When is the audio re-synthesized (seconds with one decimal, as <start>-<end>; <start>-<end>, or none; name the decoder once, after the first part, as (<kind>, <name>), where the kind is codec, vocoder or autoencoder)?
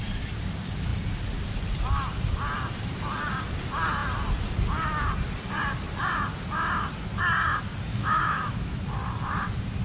7.9-8.8 (autoencoder, DAC-VAE)